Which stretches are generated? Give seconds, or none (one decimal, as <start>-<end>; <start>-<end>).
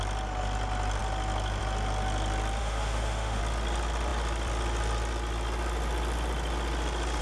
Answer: 2.6-3.4